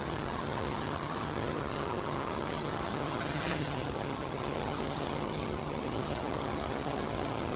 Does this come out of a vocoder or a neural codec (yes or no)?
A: yes